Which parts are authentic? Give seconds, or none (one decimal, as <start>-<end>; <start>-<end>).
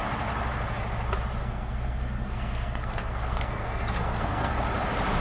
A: 0.0-1.4; 4.5-5.2